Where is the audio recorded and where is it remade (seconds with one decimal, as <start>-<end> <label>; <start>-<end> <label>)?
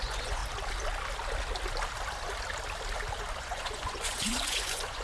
0.0-0.4 remade; 0.4-3.4 recorded; 3.4-5.0 remade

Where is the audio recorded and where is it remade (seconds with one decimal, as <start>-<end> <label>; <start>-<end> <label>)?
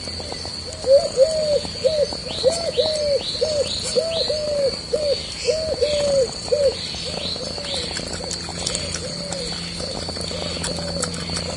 0.0-11.6 recorded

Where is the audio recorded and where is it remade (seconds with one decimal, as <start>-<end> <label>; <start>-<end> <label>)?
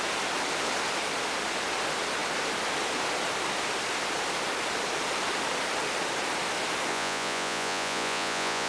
0.0-6.9 recorded; 6.9-8.7 remade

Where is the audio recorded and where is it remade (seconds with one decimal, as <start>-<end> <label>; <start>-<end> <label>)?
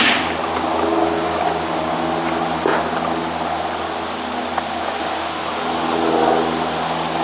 0.0-7.2 recorded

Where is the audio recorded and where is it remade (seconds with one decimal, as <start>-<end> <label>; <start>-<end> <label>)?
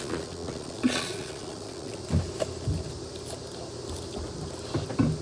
0.0-2.0 remade; 2.0-5.2 recorded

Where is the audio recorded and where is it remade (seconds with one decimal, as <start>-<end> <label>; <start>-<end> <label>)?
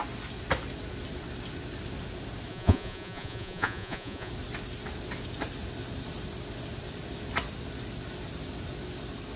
0.0-2.5 recorded; 2.5-4.3 remade; 4.3-9.4 recorded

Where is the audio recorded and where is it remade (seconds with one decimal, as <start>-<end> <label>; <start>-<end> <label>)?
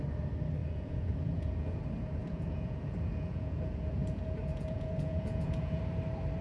0.0-0.6 recorded; 0.6-1.8 remade; 1.8-2.2 recorded; 2.2-5.8 remade; 5.8-6.4 recorded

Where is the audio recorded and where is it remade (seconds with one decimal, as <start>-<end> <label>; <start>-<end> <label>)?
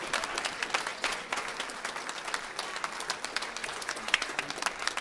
0.0-0.9 recorded; 0.9-1.6 remade; 1.6-3.6 recorded; 3.6-4.4 remade; 4.4-5.0 recorded